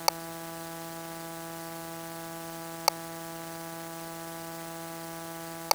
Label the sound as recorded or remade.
recorded